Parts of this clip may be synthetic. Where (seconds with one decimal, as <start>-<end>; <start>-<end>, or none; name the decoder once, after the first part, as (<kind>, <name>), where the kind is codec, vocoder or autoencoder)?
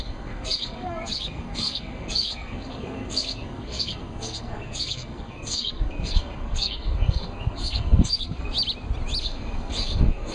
0.0-8.5 (codec, SNAC); 9.2-10.3